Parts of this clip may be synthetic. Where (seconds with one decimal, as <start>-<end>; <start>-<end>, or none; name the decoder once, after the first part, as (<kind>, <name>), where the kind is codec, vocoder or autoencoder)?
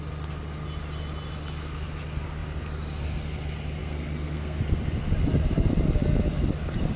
3.8-4.6 (codec, SNAC)